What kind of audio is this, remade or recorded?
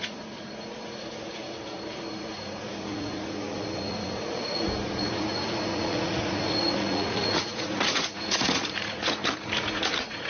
remade